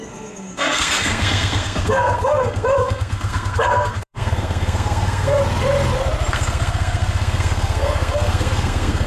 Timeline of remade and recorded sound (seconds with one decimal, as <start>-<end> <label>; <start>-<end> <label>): 0.0-5.4 remade; 5.4-6.3 recorded; 6.3-9.1 remade